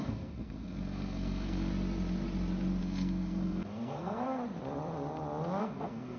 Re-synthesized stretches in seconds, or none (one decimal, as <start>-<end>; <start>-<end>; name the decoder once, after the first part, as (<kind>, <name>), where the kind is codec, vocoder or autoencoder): 0.0-1.7 (codec, SNAC); 2.8-4.4; 5.6-6.2